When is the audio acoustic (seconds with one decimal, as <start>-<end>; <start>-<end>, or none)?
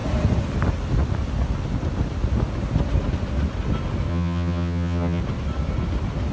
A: 0.0-4.1; 5.2-6.3